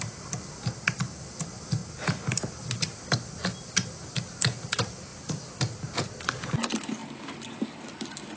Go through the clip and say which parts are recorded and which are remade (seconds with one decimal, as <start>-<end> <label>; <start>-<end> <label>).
0.0-8.4 recorded